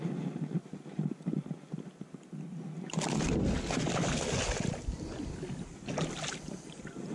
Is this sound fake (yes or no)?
no